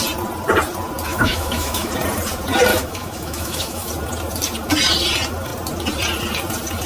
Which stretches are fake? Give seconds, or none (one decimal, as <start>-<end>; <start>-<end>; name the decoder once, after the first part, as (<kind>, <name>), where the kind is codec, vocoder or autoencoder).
1.1-1.9 (autoencoder, DAC-VAE); 2.7-3.9

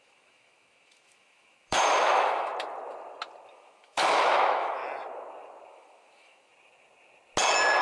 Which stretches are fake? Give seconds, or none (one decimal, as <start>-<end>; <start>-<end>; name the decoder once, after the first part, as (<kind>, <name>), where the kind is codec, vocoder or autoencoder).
0.0-2.5 (autoencoder, DAC-VAE); 3.5-4.8; 5.7-6.5

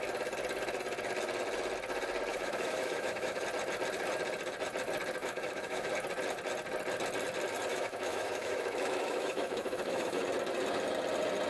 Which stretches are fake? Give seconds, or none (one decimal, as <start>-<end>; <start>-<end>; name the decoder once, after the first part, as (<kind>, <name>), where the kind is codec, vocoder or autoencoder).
2.3-3.4 (autoencoder, DAC-VAE); 5.2-5.9; 7.7-10.2

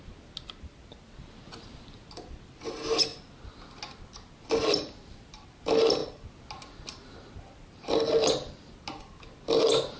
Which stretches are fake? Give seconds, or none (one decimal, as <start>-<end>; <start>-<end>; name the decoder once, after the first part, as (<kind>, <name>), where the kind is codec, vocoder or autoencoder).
none

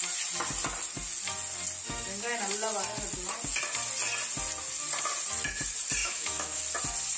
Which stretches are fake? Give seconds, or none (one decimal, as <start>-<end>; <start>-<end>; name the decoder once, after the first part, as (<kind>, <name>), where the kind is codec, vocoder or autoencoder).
6.0-6.6 (autoencoder, DAC-VAE)

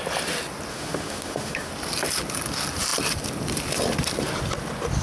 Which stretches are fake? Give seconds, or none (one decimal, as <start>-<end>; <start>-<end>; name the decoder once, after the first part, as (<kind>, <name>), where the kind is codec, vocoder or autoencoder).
0.7-1.7 (autoencoder, DAC-VAE)

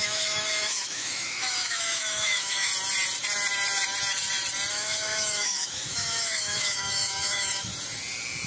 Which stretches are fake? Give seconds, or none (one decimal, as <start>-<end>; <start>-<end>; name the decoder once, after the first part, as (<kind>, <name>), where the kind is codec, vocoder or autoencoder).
0.0-2.7 (autoencoder, DAC-VAE); 4.7-7.7

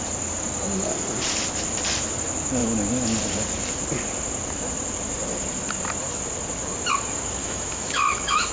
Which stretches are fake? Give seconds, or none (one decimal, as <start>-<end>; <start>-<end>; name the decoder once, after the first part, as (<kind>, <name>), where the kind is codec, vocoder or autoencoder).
7.4-8.5 (autoencoder, DAC-VAE)